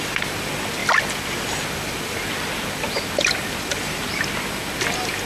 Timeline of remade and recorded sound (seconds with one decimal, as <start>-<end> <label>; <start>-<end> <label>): 0.0-5.3 recorded

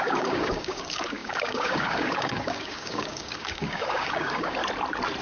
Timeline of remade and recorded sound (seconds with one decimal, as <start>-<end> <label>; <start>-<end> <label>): 0.0-4.6 remade; 4.6-5.2 recorded

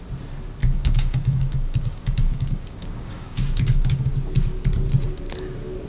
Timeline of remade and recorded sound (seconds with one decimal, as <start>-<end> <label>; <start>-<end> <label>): 0.0-0.6 recorded; 0.6-4.1 remade; 4.1-5.9 recorded